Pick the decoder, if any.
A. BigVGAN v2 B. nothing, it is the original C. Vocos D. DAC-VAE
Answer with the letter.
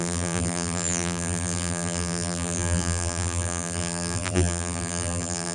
A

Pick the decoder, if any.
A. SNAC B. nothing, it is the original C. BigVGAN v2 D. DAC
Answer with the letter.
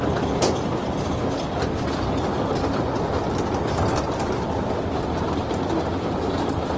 B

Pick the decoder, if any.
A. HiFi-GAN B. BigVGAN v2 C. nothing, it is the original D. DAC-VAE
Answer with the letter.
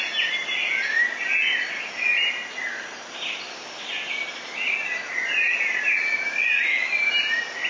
C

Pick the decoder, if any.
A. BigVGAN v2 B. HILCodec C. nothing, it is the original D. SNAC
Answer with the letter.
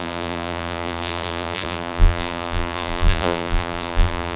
A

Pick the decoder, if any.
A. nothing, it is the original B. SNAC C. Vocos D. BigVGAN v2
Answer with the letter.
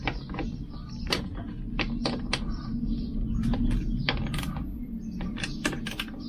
A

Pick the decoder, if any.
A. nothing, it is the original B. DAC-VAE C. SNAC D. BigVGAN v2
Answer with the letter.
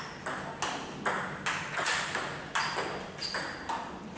A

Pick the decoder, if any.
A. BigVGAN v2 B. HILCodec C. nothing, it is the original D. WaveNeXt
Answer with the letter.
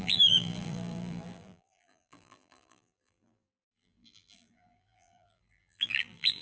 A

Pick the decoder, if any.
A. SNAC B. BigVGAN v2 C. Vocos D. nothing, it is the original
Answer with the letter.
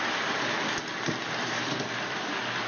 D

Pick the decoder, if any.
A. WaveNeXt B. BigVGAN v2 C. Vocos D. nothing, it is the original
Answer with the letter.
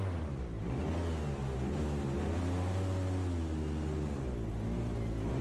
D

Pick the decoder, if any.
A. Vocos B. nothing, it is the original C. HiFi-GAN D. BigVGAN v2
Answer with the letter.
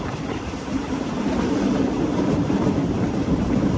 D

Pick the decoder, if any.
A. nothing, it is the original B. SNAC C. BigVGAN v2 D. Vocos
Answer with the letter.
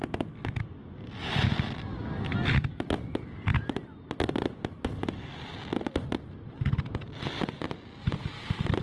A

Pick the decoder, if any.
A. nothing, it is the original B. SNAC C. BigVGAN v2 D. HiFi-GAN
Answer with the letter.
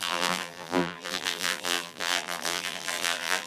C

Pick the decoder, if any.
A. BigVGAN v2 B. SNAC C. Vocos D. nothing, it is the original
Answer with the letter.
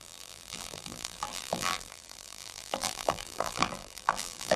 A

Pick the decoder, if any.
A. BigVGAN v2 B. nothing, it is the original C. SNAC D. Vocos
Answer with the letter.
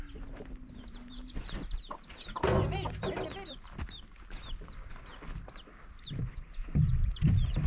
A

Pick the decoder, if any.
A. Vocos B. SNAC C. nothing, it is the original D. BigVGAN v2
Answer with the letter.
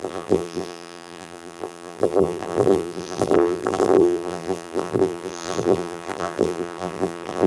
D